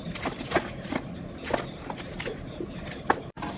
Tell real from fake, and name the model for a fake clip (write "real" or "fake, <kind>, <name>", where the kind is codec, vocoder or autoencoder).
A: real